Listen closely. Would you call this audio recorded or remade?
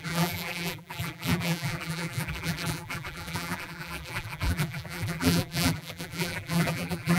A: remade